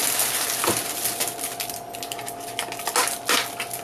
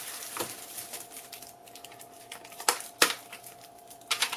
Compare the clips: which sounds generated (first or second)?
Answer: second